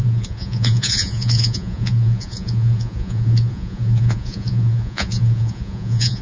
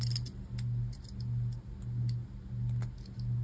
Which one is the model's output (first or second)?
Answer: first